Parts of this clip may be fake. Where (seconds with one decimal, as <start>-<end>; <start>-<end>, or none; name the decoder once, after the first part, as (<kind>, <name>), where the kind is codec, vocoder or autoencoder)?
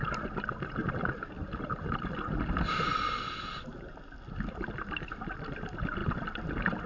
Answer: none